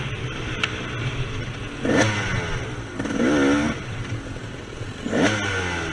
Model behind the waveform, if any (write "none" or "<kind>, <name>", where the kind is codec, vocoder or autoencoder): none